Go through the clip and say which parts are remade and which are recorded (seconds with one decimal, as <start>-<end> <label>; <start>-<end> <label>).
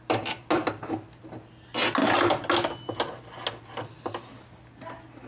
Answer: 0.0-5.3 recorded